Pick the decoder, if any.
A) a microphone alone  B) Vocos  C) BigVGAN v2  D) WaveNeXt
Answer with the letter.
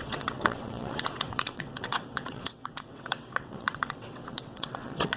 D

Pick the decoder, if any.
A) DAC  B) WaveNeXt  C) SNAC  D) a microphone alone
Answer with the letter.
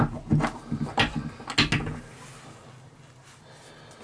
D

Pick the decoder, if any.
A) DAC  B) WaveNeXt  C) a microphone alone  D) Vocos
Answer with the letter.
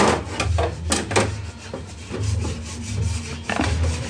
C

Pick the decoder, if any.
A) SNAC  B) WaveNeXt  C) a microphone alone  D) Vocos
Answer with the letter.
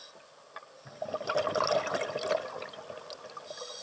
C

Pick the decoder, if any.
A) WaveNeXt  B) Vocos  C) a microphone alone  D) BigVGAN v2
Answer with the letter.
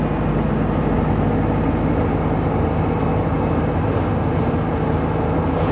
C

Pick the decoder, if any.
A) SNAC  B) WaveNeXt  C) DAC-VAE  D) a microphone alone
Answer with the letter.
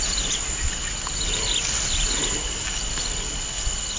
D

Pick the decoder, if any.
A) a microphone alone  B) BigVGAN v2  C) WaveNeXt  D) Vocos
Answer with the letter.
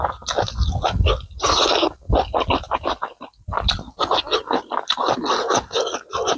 A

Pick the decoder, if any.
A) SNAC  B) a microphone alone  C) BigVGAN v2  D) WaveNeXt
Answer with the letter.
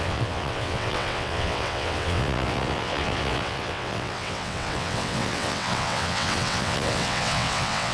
D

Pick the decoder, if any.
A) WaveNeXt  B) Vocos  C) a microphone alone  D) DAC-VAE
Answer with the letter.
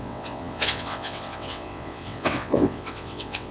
A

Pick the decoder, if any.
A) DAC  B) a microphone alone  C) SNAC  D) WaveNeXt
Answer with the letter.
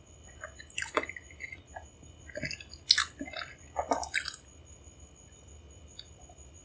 B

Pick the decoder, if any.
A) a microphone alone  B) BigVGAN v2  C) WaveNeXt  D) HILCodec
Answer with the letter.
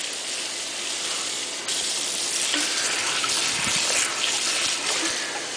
A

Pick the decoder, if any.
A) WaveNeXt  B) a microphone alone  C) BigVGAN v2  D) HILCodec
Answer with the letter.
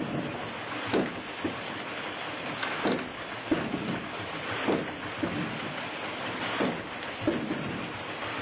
B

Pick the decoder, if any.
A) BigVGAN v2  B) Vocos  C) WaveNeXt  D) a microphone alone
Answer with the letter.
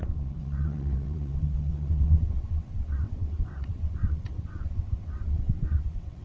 C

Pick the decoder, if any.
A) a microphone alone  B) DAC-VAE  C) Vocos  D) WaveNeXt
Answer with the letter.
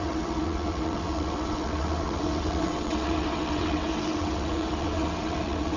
D